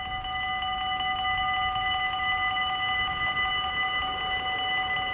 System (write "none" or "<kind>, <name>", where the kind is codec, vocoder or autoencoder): none